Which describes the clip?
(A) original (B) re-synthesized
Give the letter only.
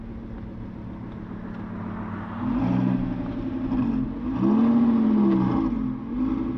A